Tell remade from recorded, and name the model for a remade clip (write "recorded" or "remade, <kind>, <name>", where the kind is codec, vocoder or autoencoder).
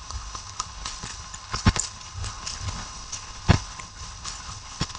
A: remade, codec, HILCodec